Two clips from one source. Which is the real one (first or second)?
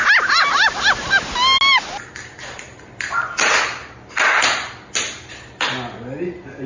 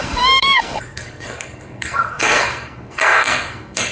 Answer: first